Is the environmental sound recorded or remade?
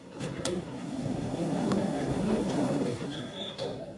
remade